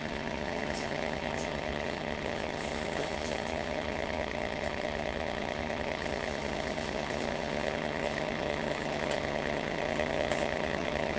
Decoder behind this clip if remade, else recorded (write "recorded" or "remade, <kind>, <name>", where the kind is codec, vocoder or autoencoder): remade, vocoder, HiFi-GAN